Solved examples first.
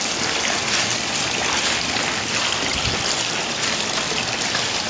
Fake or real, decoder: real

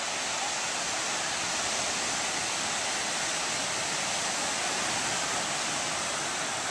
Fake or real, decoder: real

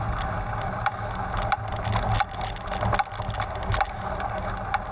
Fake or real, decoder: real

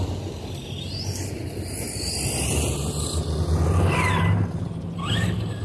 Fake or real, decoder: real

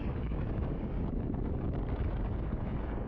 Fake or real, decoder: fake, codec, DAC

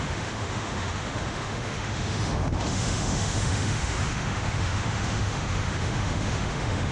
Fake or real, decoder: fake, autoencoder, DAC-VAE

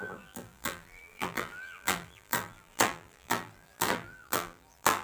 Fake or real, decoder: fake, vocoder, BigVGAN v2